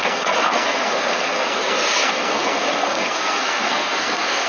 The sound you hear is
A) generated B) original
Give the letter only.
A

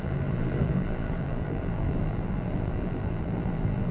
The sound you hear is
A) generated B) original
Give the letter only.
A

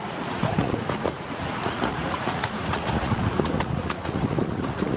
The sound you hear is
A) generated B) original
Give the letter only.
A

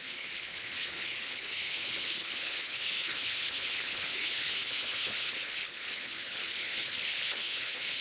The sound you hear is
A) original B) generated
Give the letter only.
B